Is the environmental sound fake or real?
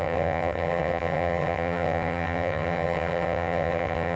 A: fake